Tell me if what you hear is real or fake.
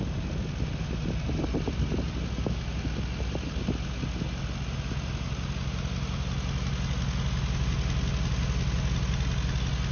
real